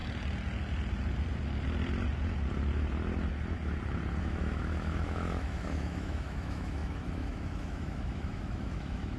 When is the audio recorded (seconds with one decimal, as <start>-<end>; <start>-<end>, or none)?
0.0-4.2